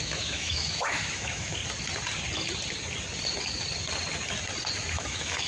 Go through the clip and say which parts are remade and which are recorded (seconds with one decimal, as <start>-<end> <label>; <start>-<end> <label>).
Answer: 0.0-1.6 remade; 1.6-4.9 recorded; 4.9-5.5 remade